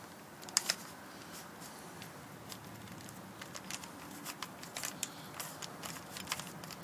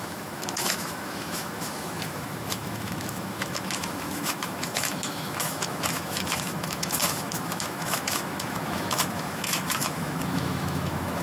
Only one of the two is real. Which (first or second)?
first